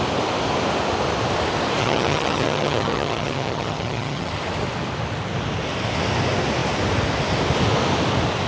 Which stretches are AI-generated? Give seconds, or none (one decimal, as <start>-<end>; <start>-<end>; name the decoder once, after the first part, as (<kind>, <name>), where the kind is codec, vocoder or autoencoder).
1.8-4.3 (vocoder, HiFi-GAN)